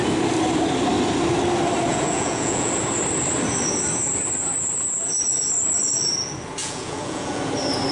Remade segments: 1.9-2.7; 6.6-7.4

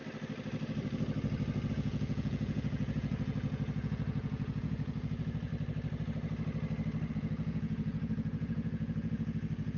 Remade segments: 1.7-5.5; 7.1-9.8

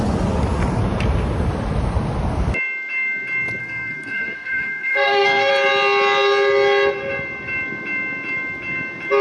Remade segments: 3.6-5.5

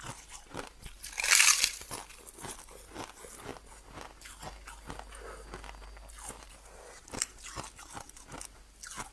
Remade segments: none

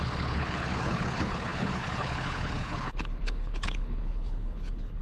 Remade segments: 0.0-5.0

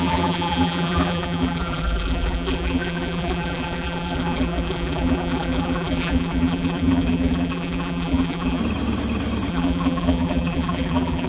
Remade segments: 0.0-8.6; 9.5-11.3

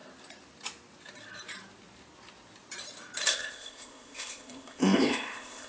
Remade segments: 3.3-5.7

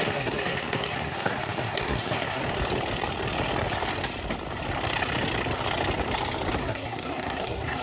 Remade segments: 0.0-2.4; 6.6-7.8